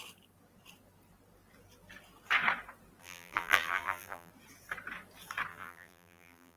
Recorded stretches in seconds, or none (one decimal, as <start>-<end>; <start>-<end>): 0.0-3.0; 4.3-5.5